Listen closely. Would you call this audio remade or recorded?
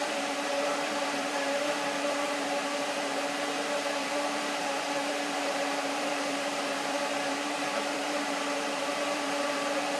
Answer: remade